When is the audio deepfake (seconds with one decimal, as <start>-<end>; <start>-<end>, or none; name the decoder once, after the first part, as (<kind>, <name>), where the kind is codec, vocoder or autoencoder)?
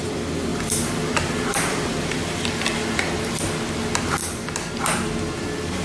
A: 0.5-3.4 (vocoder, BigVGAN v2); 4.2-4.8